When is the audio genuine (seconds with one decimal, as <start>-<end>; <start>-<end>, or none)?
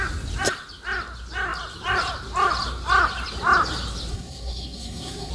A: 0.0-4.1